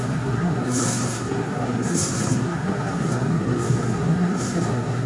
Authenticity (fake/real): fake